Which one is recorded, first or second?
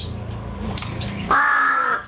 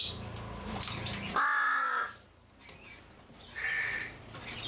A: second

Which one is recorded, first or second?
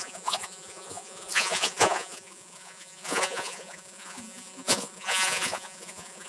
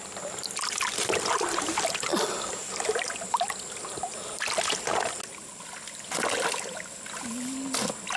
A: second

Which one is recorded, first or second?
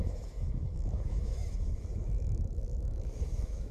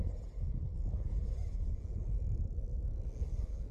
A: second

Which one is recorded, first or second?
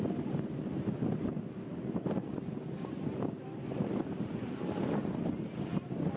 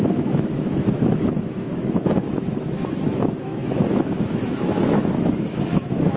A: first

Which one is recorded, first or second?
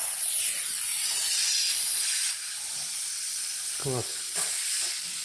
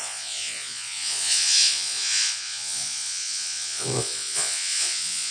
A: first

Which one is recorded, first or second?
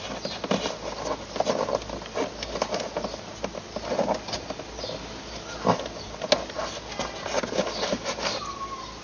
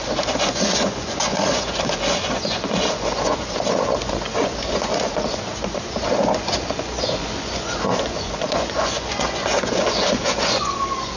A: first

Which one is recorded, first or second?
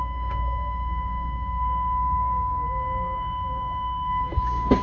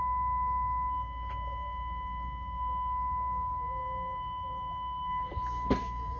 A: second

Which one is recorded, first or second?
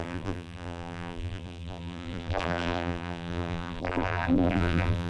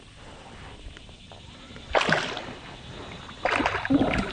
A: second